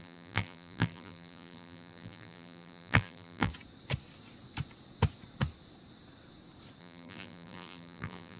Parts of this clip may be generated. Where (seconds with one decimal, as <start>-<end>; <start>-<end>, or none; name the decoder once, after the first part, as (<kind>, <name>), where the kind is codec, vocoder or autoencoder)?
0.0-3.5 (vocoder, BigVGAN v2); 6.8-8.4